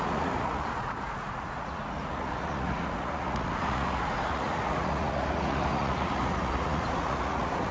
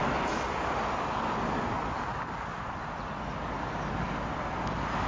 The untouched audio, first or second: second